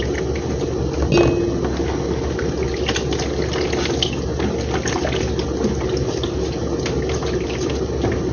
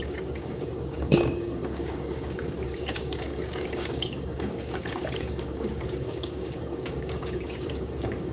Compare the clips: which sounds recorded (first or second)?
first